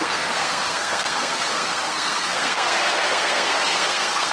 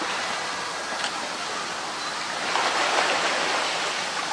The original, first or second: second